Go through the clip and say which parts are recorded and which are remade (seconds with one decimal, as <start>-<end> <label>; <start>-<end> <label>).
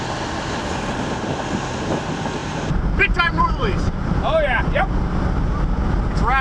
0.0-2.4 recorded; 2.4-4.8 remade; 4.8-6.4 recorded